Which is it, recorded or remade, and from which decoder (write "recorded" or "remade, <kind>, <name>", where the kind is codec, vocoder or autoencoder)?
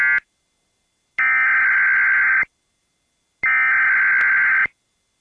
recorded